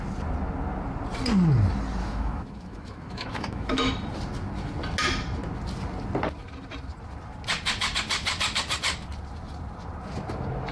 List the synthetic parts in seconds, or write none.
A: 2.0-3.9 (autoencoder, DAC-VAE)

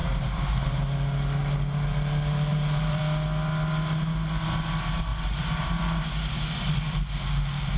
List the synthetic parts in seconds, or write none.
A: 0.0-0.8 (vocoder, BigVGAN v2); 2.5-3.0; 5.1-6.0